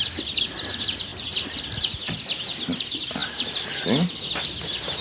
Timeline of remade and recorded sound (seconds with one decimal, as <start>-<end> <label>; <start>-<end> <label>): 0.0-5.0 recorded